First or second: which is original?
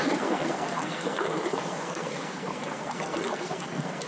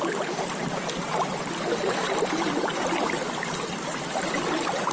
second